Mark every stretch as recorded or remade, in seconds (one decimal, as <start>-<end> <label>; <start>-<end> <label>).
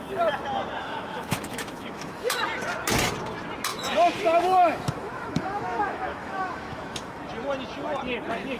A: 0.0-0.8 recorded; 0.8-2.4 remade; 2.4-3.7 recorded; 3.7-7.3 remade; 7.3-8.6 recorded